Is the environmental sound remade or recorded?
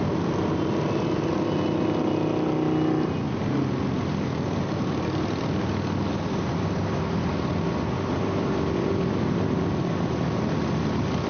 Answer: recorded